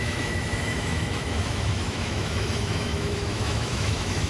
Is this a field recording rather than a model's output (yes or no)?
no